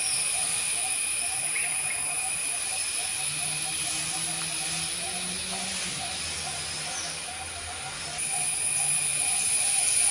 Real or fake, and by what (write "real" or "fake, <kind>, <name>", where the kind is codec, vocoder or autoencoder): real